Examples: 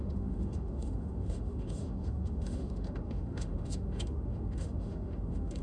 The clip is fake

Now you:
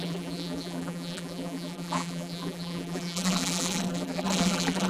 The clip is fake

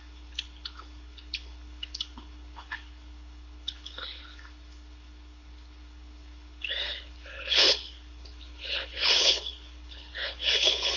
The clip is fake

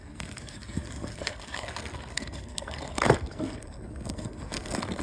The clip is fake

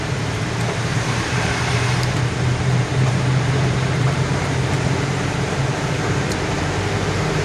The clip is fake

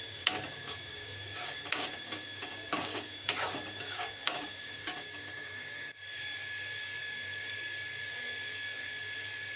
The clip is fake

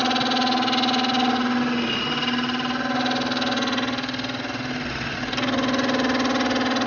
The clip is real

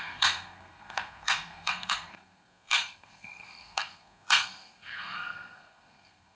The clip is fake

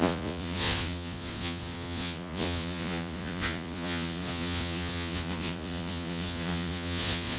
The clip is fake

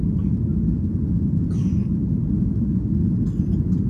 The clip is real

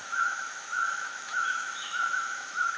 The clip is fake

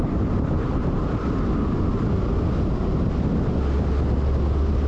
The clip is real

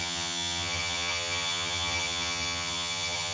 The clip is fake